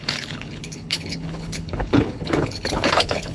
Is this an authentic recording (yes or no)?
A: no